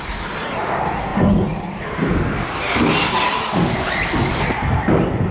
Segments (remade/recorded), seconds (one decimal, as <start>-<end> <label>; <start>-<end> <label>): 0.0-5.3 recorded